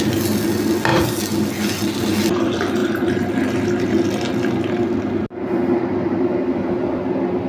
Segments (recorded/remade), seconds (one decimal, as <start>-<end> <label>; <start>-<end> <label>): 0.0-7.5 recorded